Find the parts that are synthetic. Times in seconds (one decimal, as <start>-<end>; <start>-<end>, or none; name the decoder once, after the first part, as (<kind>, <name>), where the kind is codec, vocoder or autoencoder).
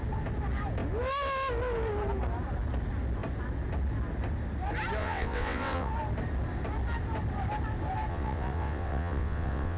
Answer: 5.0-5.9 (vocoder, WaveNeXt); 8.1-9.8